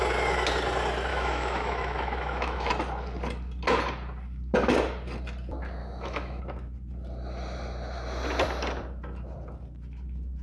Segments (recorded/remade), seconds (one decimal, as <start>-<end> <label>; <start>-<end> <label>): 0.0-1.1 recorded; 1.1-2.7 remade; 2.7-5.8 recorded; 5.8-6.4 remade; 6.4-10.4 recorded